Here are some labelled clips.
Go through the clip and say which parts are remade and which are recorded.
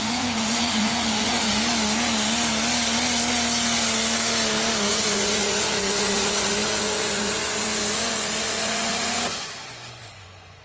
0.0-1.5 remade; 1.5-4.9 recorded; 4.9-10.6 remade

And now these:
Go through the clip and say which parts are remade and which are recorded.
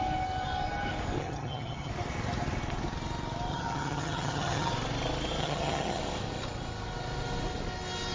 0.0-1.2 recorded; 1.2-1.9 remade; 1.9-3.5 recorded; 3.5-4.7 remade; 4.7-5.4 recorded; 5.4-6.0 remade; 6.0-8.1 recorded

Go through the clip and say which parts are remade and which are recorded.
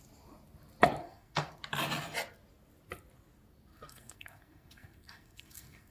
0.0-1.0 recorded; 1.0-1.6 remade; 1.6-3.7 recorded; 3.7-5.9 remade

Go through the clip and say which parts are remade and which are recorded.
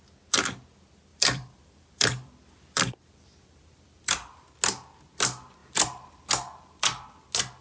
0.0-1.1 recorded; 1.1-4.5 remade; 4.5-7.6 recorded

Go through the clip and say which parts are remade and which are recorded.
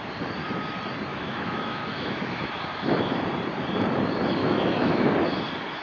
0.0-1.1 recorded; 1.1-2.5 remade; 2.5-4.4 recorded; 4.4-5.1 remade; 5.1-5.8 recorded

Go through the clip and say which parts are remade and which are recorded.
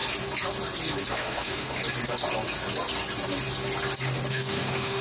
0.0-1.1 recorded; 1.1-1.8 remade; 1.8-4.3 recorded; 4.3-5.0 remade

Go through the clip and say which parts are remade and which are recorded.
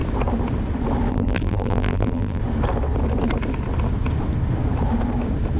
0.0-1.1 recorded; 1.1-2.4 remade; 2.4-5.6 recorded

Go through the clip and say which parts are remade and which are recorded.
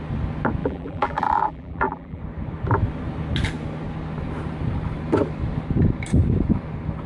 0.0-0.6 recorded; 0.6-2.2 remade; 2.2-7.1 recorded